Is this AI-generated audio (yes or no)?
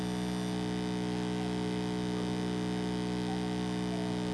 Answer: no